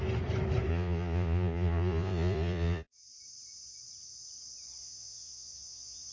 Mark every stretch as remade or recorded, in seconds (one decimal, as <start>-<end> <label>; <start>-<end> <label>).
0.0-0.7 recorded; 0.7-3.1 remade; 3.1-4.8 recorded; 4.8-6.1 remade